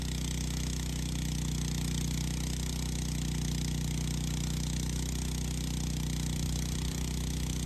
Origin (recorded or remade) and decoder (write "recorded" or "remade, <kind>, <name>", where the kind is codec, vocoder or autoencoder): recorded